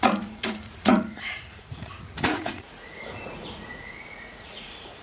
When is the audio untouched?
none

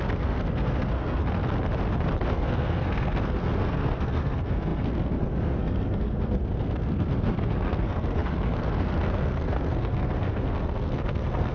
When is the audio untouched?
1.2-2.3

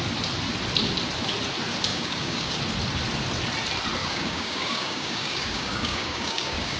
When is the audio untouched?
0.0-1.9; 2.6-4.0

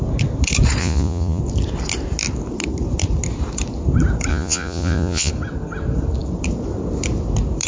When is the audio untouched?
0.0-0.8; 1.4-4.3; 5.3-7.7